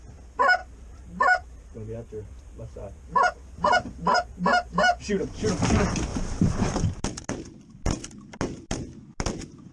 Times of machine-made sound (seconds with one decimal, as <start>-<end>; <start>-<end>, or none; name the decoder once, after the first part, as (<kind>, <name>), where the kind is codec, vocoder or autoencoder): 0.6-3.0 (vocoder, BigVGAN v2); 6.1-6.7